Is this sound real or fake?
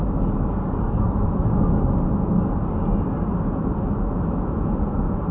real